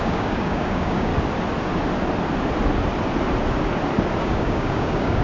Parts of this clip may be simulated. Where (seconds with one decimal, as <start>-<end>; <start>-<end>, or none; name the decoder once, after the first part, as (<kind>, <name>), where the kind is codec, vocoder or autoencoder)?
0.0-1.1 (codec, DAC); 4.2-5.2